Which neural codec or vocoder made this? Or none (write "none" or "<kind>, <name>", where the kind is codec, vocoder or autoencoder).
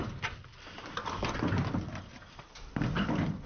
none